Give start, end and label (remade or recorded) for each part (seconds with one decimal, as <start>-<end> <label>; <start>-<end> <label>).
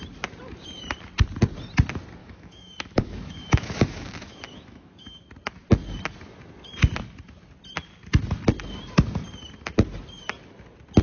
0.0-2.2 recorded; 2.2-5.2 remade; 5.2-11.0 recorded